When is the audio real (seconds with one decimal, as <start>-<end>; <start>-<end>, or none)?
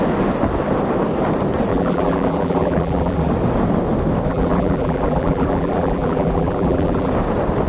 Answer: 0.0-1.7; 3.3-4.3; 7.1-7.7